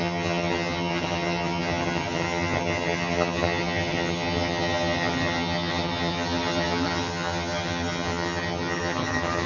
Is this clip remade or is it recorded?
remade